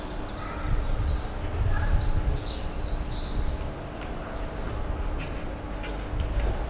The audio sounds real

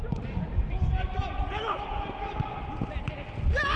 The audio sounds real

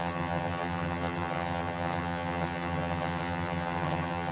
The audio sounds fake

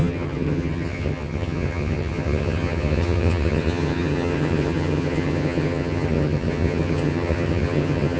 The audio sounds fake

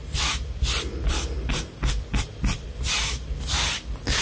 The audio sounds real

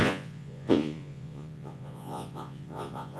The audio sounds fake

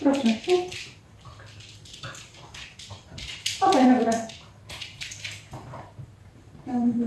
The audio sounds fake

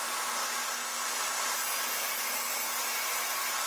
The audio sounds real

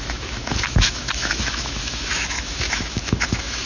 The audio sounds fake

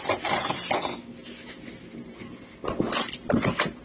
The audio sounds real